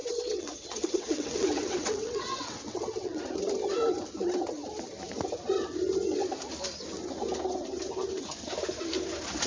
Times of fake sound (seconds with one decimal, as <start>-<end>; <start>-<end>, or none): 0.0-3.2